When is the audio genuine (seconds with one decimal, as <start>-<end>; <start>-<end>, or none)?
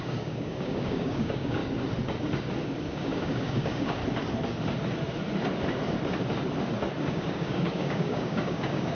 1.6-2.9; 4.0-7.1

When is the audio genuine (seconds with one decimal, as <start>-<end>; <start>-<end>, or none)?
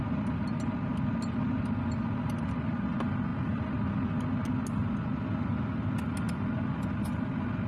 0.0-7.7